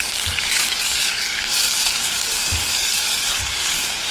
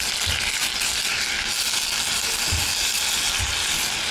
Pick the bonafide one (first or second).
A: second